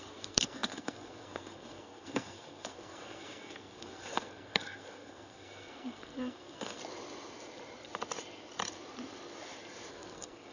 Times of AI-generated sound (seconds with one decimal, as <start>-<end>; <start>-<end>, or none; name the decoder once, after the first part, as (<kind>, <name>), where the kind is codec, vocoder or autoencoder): 0.0-6.8 (codec, SNAC); 9.9-10.5